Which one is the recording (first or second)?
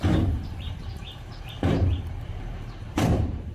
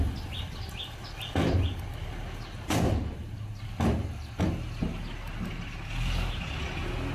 second